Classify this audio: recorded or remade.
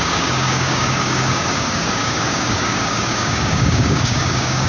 remade